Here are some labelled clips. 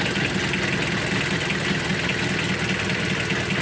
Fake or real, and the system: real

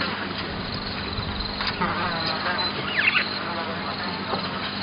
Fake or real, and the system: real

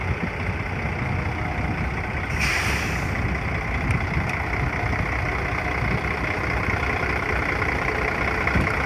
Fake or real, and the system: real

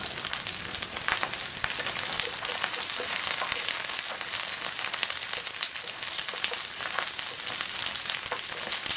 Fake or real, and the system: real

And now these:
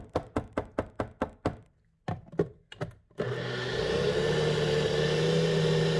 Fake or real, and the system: real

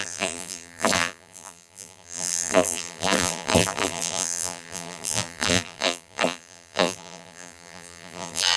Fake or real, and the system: fake, vocoder, BigVGAN v2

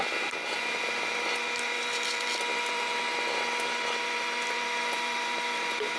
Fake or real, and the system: fake, vocoder, BigVGAN v2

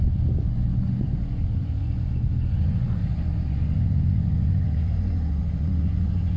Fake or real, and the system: fake, vocoder, Vocos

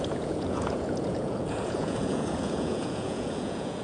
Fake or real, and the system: fake, vocoder, Vocos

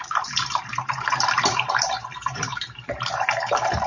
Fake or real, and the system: fake, vocoder, BigVGAN v2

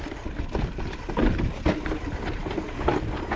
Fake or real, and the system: real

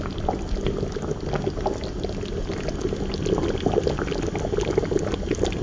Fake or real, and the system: real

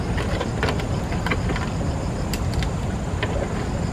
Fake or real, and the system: real